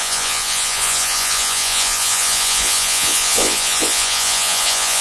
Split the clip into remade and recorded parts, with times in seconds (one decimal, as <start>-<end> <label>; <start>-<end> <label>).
0.0-5.0 remade